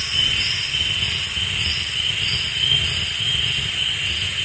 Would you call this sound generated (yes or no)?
no